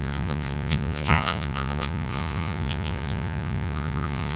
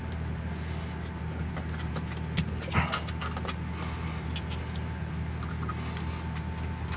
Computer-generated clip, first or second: first